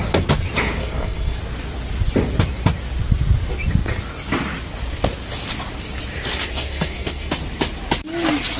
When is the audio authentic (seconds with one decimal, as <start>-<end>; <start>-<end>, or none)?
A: 0.0-0.8; 1.4-6.5; 7.3-8.6